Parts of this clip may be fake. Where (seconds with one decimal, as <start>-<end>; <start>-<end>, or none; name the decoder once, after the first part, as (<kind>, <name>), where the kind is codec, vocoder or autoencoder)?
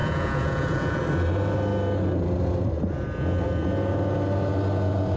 0.0-1.0 (vocoder, Vocos)